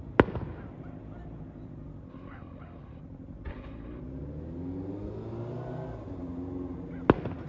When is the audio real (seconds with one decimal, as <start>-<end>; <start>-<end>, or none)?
0.0-2.1; 3.0-3.5; 4.0-7.5